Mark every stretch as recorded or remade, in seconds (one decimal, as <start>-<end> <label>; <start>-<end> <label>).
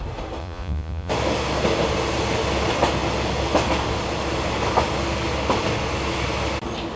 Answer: 0.0-0.4 recorded; 0.4-1.1 remade; 1.1-7.0 recorded